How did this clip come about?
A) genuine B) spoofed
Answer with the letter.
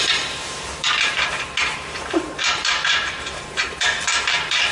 B